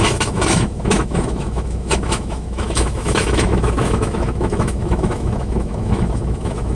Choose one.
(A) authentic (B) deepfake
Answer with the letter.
B